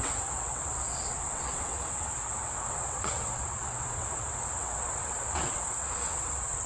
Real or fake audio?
fake